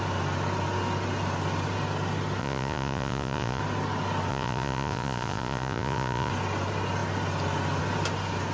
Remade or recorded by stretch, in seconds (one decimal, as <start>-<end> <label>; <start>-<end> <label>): 0.0-2.4 recorded; 2.4-3.6 remade; 3.6-4.3 recorded; 4.3-6.3 remade; 6.3-8.5 recorded